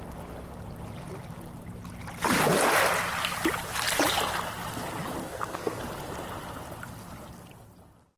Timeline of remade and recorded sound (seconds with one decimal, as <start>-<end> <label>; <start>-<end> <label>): 0.0-5.2 recorded; 5.2-5.8 remade; 5.8-8.2 recorded